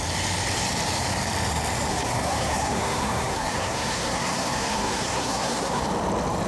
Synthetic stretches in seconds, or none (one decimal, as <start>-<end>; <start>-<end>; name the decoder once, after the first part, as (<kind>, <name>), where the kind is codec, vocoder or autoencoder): 1.9-5.8 (codec, SNAC)